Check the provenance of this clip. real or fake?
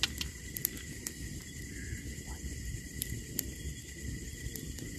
real